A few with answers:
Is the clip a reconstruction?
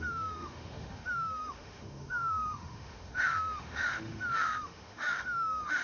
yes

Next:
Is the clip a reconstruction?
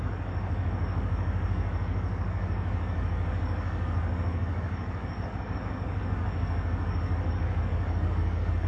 yes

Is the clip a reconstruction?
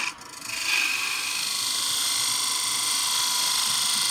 no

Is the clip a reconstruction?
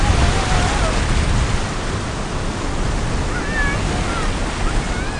no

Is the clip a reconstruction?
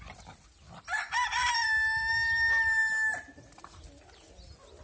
no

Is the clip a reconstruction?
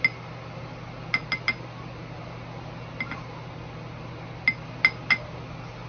no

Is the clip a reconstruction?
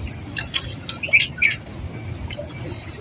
no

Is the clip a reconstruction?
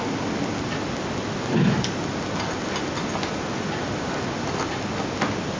no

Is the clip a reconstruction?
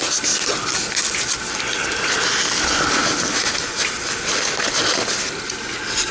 no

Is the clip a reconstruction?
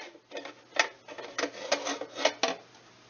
no